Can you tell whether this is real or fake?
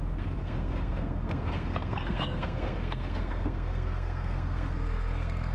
fake